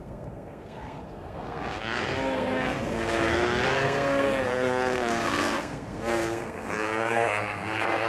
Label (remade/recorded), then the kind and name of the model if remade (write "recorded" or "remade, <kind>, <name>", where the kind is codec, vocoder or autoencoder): remade, codec, SNAC